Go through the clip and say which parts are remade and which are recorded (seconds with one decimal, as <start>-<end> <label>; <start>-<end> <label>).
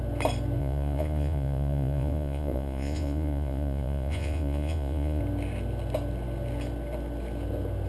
0.0-0.6 recorded; 0.6-5.2 remade; 5.2-7.9 recorded